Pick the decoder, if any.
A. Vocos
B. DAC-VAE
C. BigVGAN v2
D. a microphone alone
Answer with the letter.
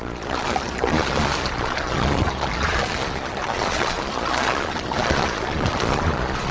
A